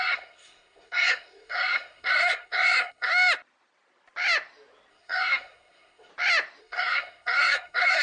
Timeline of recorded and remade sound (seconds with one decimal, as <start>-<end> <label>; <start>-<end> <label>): 0.0-3.1 remade; 3.1-4.9 recorded; 4.9-6.1 remade; 6.1-6.6 recorded; 6.6-8.0 remade